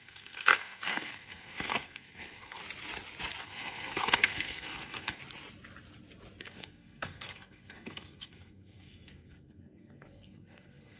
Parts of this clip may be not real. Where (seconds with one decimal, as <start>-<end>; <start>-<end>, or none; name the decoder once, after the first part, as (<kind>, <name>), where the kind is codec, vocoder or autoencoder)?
0.0-2.6 (codec, SNAC); 3.4-5.2; 6.4-11.0